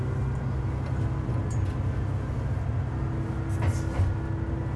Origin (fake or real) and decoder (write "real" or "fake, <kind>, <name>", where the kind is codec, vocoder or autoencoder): real